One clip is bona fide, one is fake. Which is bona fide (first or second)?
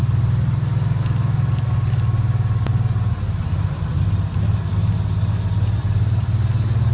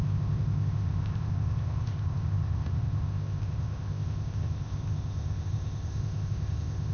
first